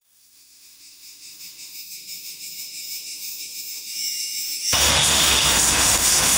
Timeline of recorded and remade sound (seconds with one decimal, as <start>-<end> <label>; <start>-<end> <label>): 0.0-6.4 remade

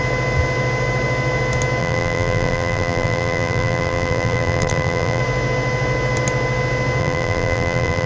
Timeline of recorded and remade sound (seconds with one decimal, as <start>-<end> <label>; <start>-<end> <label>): 0.0-1.8 recorded; 1.8-5.2 remade; 5.2-7.0 recorded; 7.0-8.1 remade

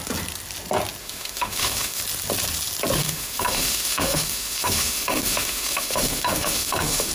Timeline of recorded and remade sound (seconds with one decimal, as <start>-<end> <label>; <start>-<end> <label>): 0.0-1.0 recorded; 1.0-2.0 remade; 2.0-3.0 recorded; 3.0-7.1 remade